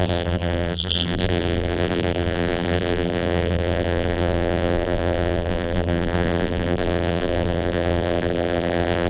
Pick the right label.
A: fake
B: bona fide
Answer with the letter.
A